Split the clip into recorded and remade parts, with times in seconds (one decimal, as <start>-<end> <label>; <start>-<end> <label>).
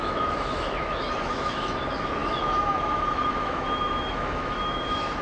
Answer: 0.0-5.2 remade